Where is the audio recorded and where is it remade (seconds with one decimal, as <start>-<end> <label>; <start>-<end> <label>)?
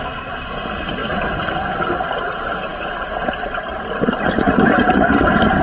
0.0-5.6 recorded